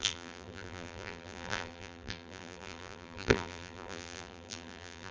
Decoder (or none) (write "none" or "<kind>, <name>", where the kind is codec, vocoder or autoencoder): vocoder, BigVGAN v2